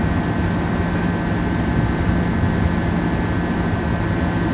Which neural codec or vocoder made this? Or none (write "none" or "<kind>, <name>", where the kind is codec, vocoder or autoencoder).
none